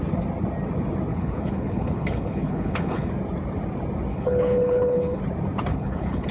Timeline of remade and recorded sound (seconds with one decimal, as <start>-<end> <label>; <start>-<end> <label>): 0.0-1.1 recorded; 1.1-3.1 remade; 3.1-4.1 recorded; 4.1-5.2 remade; 5.2-5.7 recorded; 5.7-6.3 remade

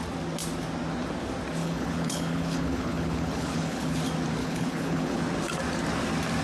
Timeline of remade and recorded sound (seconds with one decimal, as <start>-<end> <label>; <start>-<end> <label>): 0.0-1.6 recorded; 1.6-4.0 remade; 4.0-4.4 recorded; 4.4-5.2 remade; 5.2-6.4 recorded